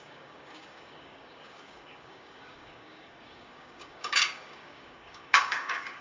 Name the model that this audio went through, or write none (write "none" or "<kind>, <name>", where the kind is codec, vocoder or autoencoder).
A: codec, DAC